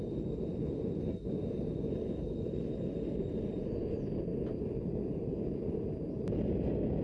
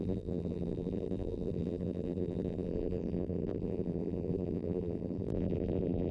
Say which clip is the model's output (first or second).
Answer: second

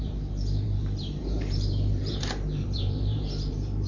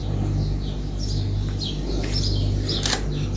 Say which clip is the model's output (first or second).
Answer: first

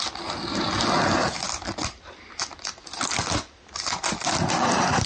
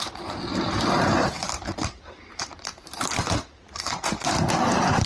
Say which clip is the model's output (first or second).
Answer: second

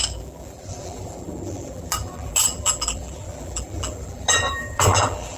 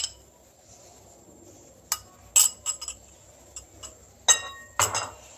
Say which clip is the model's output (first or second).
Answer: first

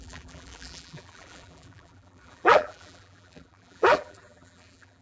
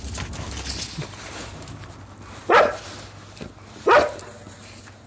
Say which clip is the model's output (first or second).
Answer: first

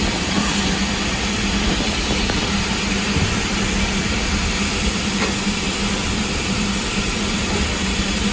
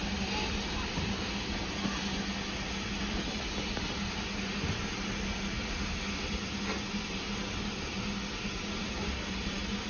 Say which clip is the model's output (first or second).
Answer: first